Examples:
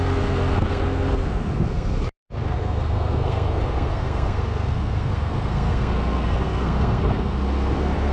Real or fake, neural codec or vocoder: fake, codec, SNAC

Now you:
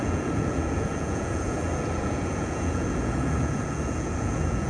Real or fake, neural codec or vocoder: fake, vocoder, Vocos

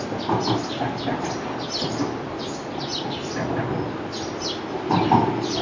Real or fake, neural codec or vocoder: real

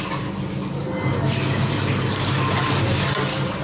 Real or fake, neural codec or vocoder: real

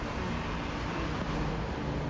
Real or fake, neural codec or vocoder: real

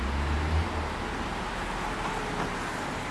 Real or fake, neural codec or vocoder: real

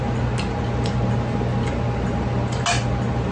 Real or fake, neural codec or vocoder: real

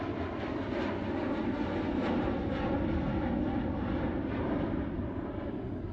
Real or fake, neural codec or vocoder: real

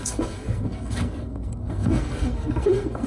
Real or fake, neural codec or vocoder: fake, codec, SNAC